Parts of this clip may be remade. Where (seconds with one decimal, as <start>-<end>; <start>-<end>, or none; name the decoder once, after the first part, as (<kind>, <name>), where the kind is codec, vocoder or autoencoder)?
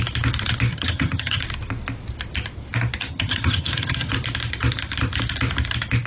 0.7-1.4 (vocoder, HiFi-GAN); 3.1-4.1